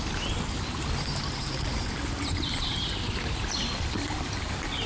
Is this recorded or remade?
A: recorded